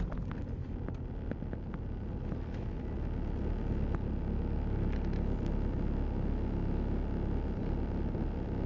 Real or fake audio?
real